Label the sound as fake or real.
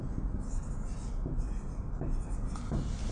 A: real